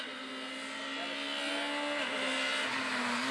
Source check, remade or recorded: recorded